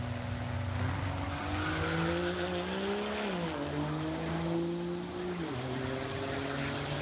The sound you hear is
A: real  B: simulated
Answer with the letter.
A